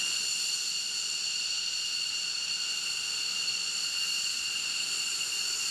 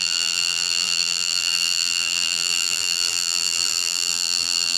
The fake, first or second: second